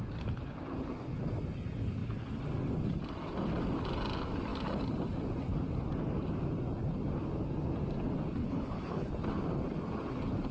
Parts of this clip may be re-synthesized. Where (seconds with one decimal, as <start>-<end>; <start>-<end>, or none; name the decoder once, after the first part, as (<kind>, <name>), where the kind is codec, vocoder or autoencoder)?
8.4-9.1 (codec, HILCodec)